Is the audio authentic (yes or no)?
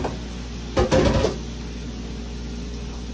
yes